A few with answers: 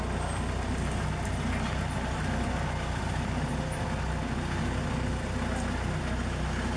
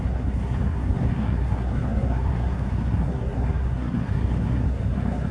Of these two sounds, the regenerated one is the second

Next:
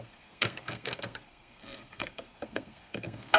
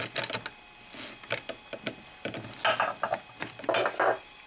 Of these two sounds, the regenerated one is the first